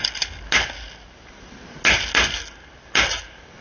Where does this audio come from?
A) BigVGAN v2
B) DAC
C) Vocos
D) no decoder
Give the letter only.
D